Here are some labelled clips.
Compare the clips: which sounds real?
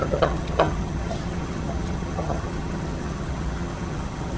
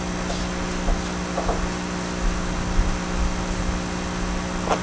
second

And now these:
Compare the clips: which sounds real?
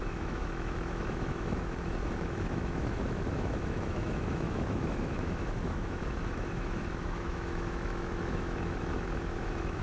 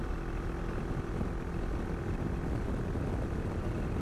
second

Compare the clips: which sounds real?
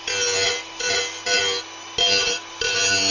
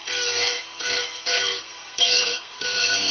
first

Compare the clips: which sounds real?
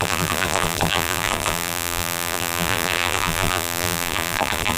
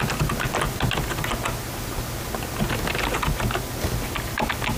second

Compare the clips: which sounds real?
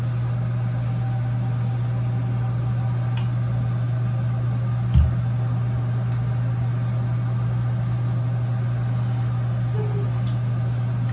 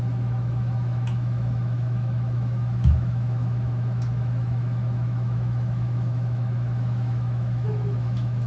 first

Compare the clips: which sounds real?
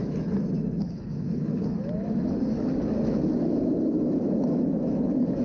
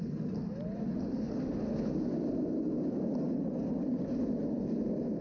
second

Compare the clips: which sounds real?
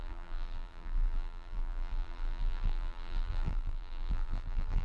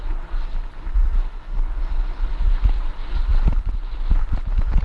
second